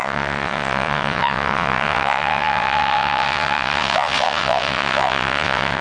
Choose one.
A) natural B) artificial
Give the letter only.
B